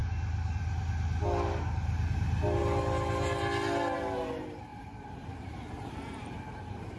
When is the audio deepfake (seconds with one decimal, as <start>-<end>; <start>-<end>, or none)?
4.7-7.0